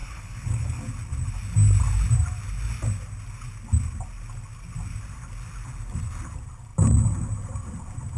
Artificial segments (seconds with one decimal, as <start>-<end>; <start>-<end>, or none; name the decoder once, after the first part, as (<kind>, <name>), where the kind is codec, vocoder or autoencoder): 0.0-0.8 (codec, HILCodec)